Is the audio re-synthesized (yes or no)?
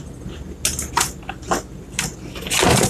no